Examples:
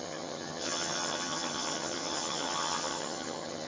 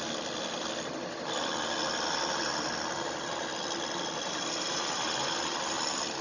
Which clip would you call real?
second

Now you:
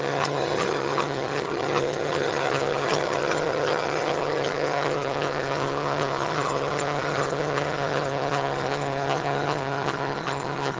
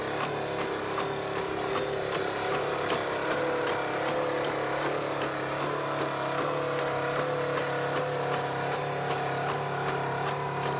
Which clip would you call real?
second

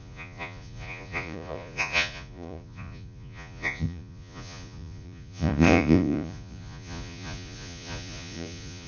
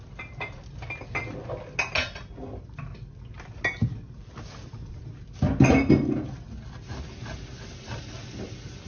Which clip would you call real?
second